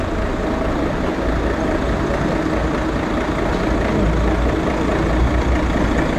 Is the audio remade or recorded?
recorded